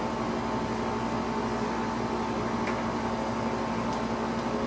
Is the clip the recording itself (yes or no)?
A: yes